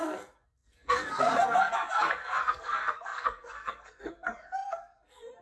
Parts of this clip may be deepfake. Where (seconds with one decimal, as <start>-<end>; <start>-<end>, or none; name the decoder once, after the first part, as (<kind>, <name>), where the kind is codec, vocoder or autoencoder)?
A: 0.0-5.4 (codec, SNAC)